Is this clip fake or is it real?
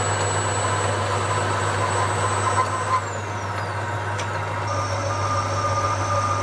real